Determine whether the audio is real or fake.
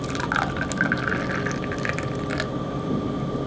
real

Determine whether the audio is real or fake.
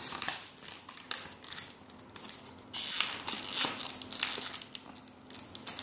real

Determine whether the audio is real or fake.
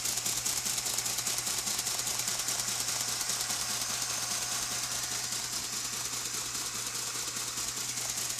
real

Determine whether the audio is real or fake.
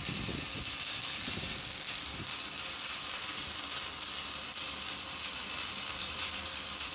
fake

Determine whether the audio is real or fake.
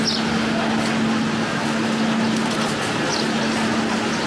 real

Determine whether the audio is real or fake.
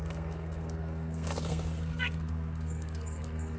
fake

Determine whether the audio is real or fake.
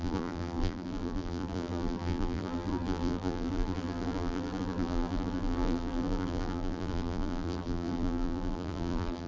fake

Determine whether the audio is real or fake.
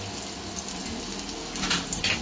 real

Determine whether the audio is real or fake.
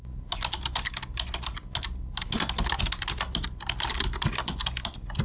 real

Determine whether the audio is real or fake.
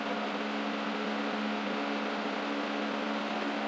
real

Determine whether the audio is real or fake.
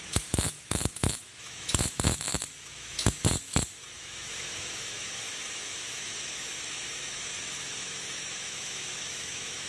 fake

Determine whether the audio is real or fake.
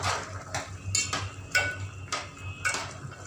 real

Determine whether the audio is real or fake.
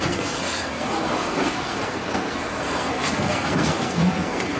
fake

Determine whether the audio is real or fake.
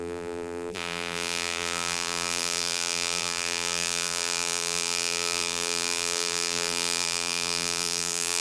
fake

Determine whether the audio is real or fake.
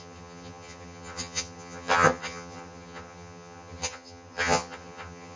fake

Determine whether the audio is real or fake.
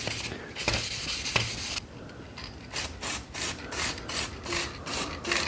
real